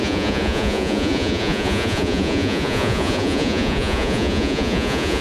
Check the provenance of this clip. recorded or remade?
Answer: remade